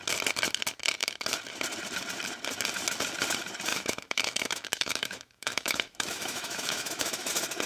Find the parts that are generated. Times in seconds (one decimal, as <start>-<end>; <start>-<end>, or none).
3.7-7.3